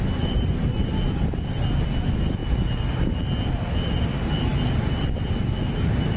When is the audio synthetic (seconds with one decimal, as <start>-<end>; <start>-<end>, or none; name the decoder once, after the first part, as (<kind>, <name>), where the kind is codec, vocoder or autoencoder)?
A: none